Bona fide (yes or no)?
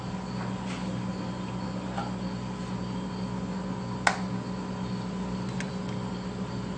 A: yes